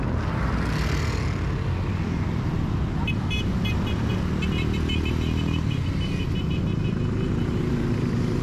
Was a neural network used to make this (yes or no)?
no